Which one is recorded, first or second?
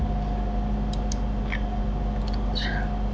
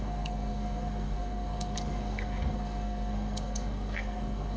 first